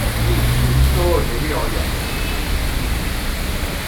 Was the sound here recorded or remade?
recorded